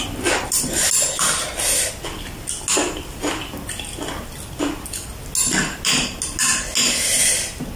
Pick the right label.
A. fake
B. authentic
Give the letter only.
B